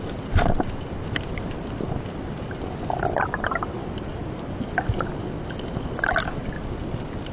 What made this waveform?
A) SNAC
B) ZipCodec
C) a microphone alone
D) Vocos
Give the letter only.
C